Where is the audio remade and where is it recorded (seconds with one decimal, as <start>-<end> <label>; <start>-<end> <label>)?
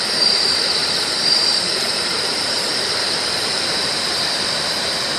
0.0-5.2 remade